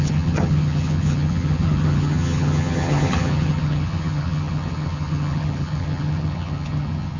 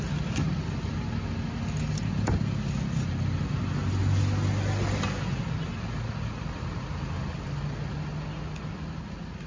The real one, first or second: second